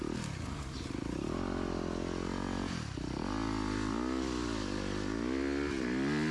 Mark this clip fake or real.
real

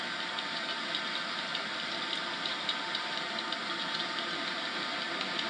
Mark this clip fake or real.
real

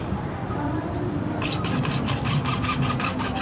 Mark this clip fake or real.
fake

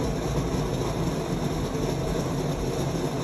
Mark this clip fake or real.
real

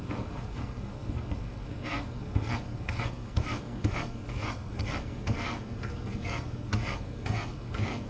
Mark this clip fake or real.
fake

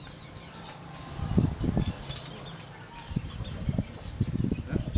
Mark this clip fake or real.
real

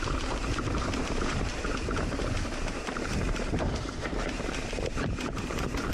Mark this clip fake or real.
fake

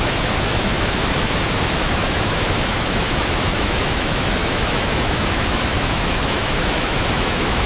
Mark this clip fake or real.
fake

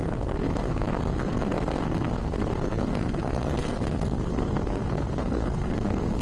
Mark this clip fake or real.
fake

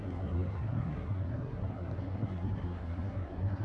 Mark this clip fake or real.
fake